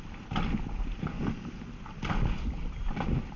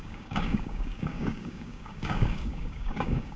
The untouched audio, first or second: first